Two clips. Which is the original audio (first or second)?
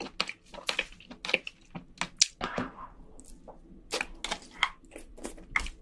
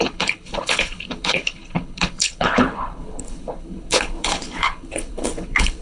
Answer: first